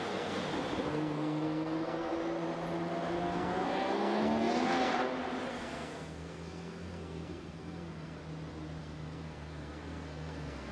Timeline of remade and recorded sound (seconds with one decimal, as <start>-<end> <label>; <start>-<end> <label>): 0.0-0.4 remade; 0.4-0.9 recorded; 0.9-2.1 remade; 2.1-3.2 recorded; 3.2-4.9 remade; 4.9-5.5 recorded; 5.5-8.2 remade; 8.2-8.8 recorded; 8.8-10.7 remade